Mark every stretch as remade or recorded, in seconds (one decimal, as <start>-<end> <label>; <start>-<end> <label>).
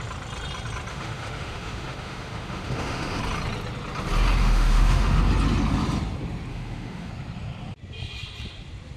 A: 0.0-0.9 recorded; 0.9-3.2 remade; 3.2-4.4 recorded; 4.4-5.2 remade; 5.2-6.5 recorded; 6.5-7.1 remade; 7.1-9.0 recorded